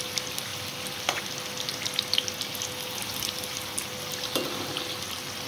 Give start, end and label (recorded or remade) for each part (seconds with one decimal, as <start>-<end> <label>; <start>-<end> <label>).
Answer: 0.0-5.5 recorded